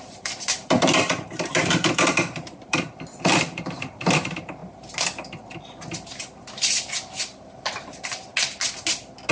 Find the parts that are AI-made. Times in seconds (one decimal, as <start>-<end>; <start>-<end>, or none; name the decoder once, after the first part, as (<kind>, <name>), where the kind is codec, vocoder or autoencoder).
0.0-4.6 (vocoder, BigVGAN v2); 7.2-8.3